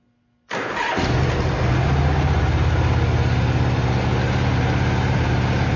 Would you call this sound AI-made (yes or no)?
no